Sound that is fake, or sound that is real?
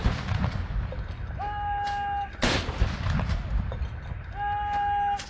real